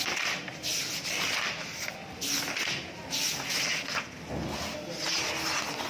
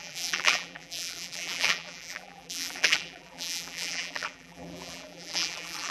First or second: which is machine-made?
second